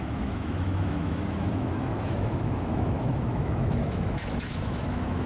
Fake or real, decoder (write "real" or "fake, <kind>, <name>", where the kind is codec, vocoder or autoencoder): fake, autoencoder, DAC-VAE